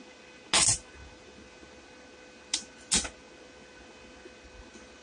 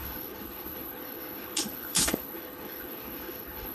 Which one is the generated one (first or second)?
second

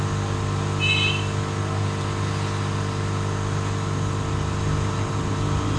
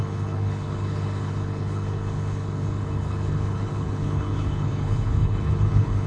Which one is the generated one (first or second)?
second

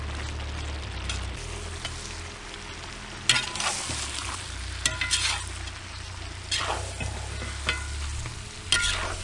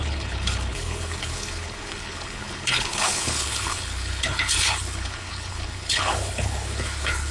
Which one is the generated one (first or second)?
second